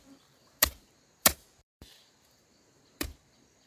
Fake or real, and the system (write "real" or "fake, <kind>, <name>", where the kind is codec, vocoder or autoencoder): fake, vocoder, BigVGAN v2